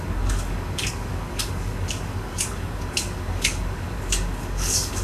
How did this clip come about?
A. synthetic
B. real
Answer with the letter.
A